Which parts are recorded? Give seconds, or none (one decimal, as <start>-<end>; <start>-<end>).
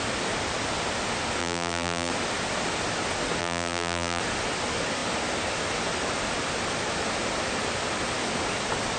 0.0-1.4; 2.1-3.4; 4.2-9.0